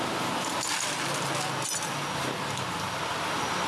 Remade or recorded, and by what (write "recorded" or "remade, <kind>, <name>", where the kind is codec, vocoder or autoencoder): recorded